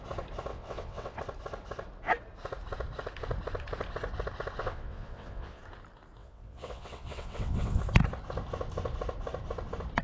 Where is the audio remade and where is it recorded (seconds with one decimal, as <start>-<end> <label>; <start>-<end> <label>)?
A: 0.0-0.5 recorded; 0.5-1.2 remade; 1.2-4.6 recorded; 4.6-5.6 remade; 5.6-6.2 recorded; 6.2-7.8 remade; 7.8-10.0 recorded